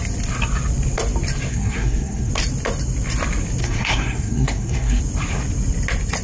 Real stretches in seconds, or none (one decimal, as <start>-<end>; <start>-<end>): 0.0-1.5; 2.3-3.6; 5.0-6.2